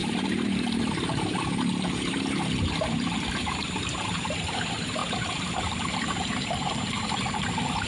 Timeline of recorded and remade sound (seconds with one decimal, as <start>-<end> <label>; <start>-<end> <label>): 0.0-7.9 remade